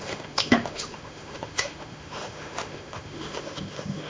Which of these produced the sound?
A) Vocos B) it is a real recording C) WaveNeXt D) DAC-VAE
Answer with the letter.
D